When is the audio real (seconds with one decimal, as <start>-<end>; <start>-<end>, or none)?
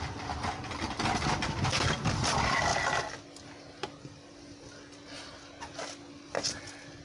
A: 0.0-7.0